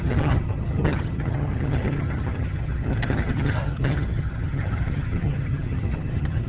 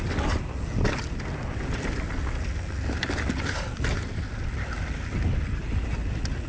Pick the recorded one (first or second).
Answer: second